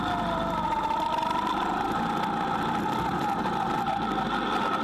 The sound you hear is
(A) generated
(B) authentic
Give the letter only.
B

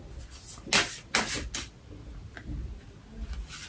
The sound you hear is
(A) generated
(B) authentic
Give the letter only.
B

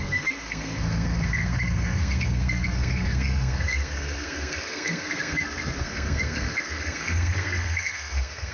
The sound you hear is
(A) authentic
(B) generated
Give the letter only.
B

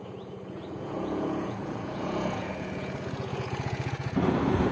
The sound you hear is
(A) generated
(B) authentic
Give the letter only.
A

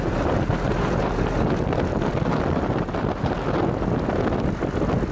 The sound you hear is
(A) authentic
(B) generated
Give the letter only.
B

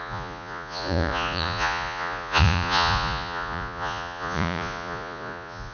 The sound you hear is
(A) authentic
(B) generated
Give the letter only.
B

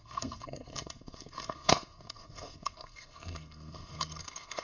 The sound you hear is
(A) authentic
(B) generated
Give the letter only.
B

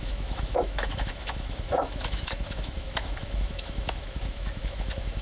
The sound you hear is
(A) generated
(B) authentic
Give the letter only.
A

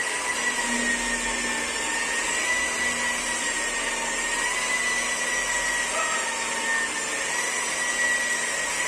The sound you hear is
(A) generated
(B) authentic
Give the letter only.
B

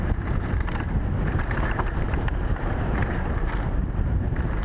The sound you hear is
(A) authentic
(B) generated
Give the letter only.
B